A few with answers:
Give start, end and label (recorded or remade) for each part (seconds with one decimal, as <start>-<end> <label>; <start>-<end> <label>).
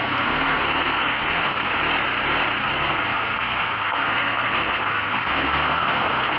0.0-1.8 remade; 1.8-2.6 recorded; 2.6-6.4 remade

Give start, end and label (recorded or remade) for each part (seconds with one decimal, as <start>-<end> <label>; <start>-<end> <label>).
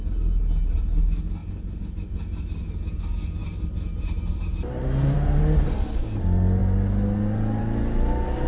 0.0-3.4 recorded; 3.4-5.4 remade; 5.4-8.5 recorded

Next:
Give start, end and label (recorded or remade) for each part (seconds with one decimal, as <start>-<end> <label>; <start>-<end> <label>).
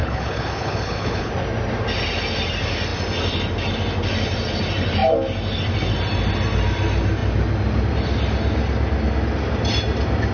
0.0-1.3 remade; 1.3-10.3 recorded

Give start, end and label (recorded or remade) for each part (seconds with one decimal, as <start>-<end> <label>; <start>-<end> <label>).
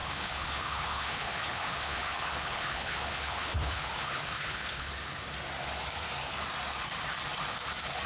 0.0-4.9 remade; 4.9-8.1 recorded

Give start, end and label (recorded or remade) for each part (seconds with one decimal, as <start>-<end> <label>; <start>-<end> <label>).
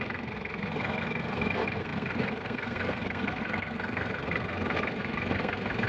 0.0-5.9 remade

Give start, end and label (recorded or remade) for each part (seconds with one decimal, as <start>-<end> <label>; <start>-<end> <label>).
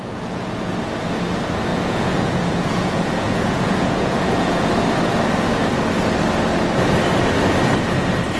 0.0-0.7 remade; 0.7-1.7 recorded; 1.7-4.7 remade; 4.7-8.4 recorded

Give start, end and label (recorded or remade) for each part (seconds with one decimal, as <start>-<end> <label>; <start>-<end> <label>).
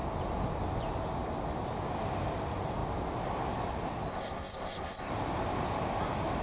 0.0-4.1 recorded; 4.1-5.1 remade; 5.1-6.4 recorded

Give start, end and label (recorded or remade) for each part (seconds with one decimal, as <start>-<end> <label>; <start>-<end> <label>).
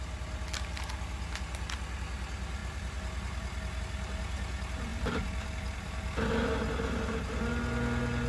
0.0-2.6 recorded; 2.6-3.8 remade; 3.8-4.9 recorded; 4.9-6.6 remade; 6.6-8.3 recorded